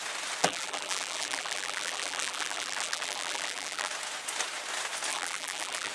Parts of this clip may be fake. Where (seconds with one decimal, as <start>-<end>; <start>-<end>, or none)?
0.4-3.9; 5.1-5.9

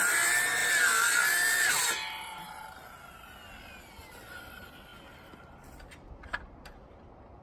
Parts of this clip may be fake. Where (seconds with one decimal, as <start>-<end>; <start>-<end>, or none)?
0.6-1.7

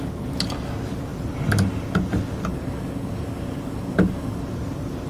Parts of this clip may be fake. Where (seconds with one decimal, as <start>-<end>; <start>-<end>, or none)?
2.5-4.4

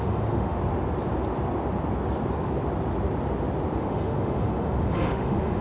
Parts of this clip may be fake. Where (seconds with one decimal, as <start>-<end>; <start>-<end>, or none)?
0.0-0.6; 3.8-5.6

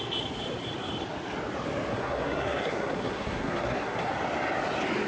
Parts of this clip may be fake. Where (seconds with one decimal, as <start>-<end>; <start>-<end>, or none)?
1.9-4.1